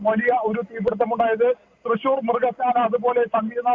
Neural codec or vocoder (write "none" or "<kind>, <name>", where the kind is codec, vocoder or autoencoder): none